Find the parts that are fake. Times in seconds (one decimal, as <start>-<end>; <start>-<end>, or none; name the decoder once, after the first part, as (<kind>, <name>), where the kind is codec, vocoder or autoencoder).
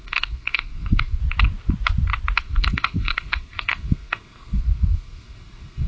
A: 0.0-1.2 (codec, SNAC); 2.4-5.9